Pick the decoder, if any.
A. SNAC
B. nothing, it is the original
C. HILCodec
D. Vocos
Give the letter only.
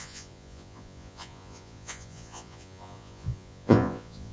D